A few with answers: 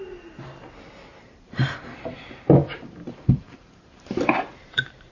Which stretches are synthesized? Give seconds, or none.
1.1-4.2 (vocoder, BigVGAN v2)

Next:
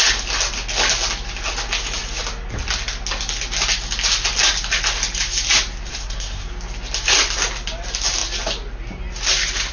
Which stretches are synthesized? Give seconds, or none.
5.9-6.5 (codec, SNAC)